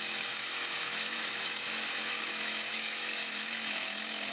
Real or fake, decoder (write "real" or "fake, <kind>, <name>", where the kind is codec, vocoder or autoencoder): fake, autoencoder, DAC-VAE